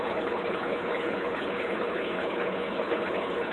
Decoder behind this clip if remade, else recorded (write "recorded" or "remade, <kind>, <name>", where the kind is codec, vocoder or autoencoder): remade, codec, HILCodec